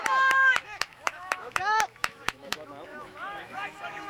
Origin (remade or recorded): remade